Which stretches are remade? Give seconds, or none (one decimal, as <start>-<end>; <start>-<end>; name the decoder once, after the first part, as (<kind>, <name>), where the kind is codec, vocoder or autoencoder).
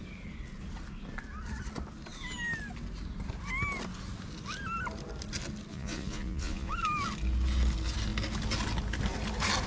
5.7-6.7 (vocoder, Vocos)